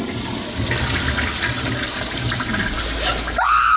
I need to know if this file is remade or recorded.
recorded